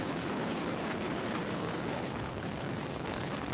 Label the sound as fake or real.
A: fake